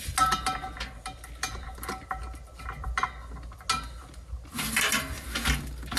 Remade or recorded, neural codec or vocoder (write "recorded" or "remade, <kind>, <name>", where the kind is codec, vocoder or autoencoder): recorded